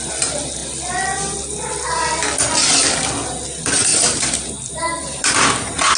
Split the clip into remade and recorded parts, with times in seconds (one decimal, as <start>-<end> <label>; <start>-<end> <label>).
0.0-3.9 recorded; 3.9-5.3 remade; 5.3-6.0 recorded